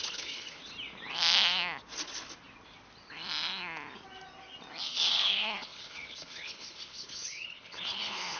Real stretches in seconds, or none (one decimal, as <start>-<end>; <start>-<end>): 0.6-4.8